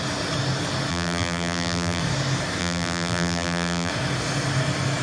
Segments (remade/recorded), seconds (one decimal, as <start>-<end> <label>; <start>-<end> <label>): 0.0-0.9 recorded; 0.9-2.0 remade; 2.0-2.6 recorded; 2.6-3.9 remade; 3.9-5.0 recorded